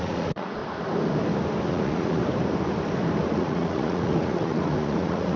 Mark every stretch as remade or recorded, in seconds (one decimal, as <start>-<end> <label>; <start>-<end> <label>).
0.0-0.6 remade; 0.6-1.7 recorded; 1.7-2.2 remade; 2.2-3.2 recorded; 3.2-5.4 remade